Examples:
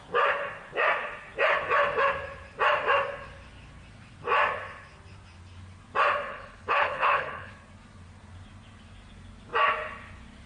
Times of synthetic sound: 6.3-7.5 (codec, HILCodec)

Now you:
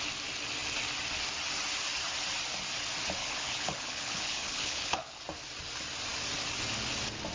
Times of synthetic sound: 3.2-5.2 (codec, HILCodec)